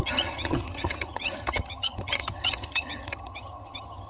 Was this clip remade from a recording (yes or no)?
yes